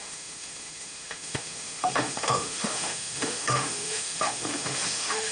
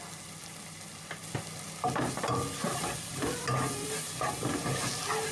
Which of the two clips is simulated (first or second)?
first